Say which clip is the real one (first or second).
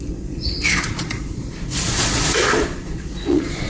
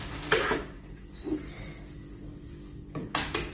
second